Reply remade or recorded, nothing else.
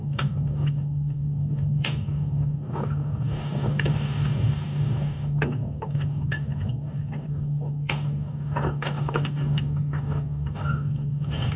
remade